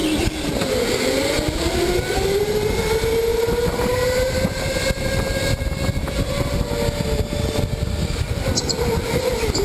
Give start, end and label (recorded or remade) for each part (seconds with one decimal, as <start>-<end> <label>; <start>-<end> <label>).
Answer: 0.0-0.5 remade; 0.5-3.3 recorded; 3.3-5.1 remade; 5.1-9.6 recorded